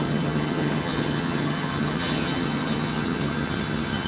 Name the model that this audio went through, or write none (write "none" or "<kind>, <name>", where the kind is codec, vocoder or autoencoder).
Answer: vocoder, HiFi-GAN